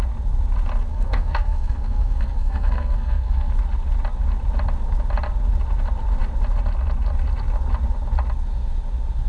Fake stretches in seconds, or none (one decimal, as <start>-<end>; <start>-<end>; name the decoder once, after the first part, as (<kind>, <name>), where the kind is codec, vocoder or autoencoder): 0.9-3.5 (codec, SNAC)

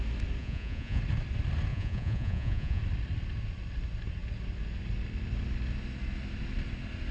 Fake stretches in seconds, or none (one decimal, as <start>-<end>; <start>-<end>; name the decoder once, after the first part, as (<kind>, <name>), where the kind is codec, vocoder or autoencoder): 0.4-1.0 (vocoder, Vocos); 1.7-2.8

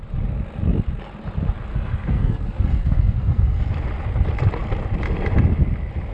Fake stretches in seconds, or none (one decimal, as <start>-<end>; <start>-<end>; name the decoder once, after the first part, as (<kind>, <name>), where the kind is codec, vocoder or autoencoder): 1.7-3.6 (codec, SNAC)

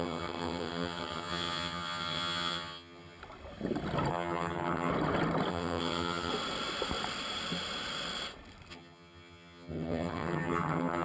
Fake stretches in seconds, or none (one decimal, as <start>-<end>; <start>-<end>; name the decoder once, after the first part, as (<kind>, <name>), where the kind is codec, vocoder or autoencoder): 0.0-3.2 (vocoder, HiFi-GAN); 4.1-4.9; 5.5-6.3; 8.7-11.0

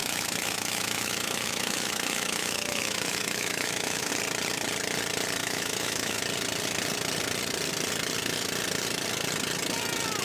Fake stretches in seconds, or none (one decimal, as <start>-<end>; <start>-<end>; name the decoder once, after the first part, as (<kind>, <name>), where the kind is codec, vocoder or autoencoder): 0.0-4.1 (autoencoder, DAC-VAE); 5.4-6.2

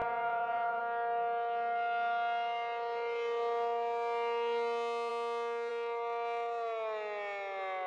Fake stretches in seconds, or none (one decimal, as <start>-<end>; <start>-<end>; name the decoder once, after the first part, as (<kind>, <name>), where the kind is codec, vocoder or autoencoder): 0.0-0.8 (vocoder, Vocos)

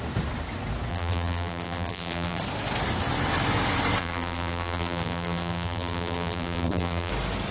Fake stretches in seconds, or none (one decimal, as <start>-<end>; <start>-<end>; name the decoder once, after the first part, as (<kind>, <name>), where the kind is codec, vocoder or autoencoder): 0.9-2.4 (vocoder, BigVGAN v2); 4.0-7.1